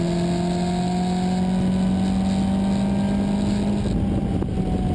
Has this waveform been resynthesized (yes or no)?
no